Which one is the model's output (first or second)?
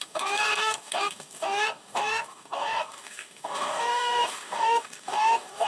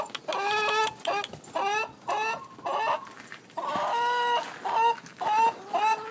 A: first